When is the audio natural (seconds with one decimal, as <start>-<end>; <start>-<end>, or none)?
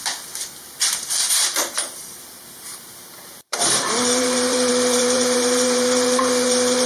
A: 0.0-1.3